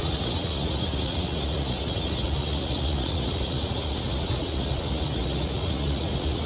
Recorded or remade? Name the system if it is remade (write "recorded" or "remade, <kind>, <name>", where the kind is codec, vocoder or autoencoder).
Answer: remade, vocoder, Vocos